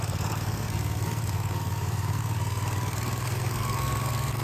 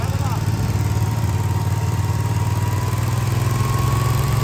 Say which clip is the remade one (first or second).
first